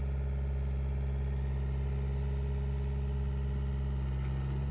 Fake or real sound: real